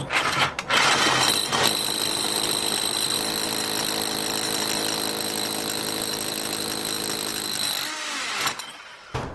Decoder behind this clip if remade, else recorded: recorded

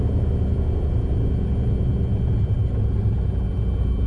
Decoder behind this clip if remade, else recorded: recorded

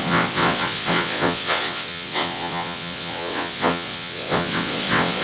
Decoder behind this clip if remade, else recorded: remade, vocoder, WaveNeXt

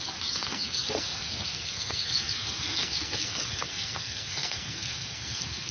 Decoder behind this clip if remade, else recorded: remade, codec, SNAC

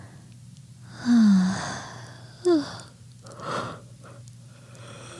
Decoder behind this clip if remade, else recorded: recorded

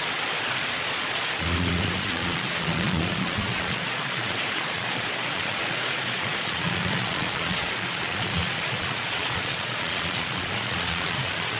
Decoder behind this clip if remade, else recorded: remade, vocoder, Vocos